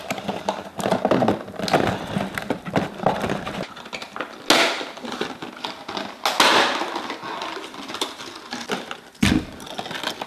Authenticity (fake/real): real